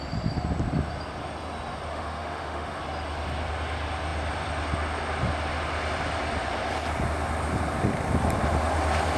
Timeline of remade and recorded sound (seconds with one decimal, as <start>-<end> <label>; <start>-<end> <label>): 0.0-1.9 recorded; 1.9-2.8 remade; 2.8-9.2 recorded